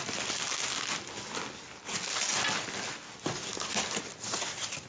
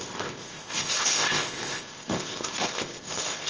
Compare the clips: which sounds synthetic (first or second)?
second